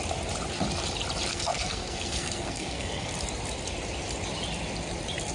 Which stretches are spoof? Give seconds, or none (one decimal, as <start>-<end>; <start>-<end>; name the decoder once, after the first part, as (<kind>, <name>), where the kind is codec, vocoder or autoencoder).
1.3-3.1 (codec, SNAC)